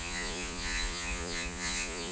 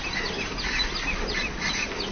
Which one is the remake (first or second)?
first